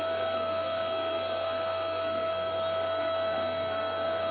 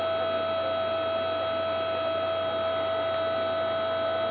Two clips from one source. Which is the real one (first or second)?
second